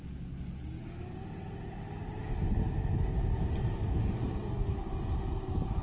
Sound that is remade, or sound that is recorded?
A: recorded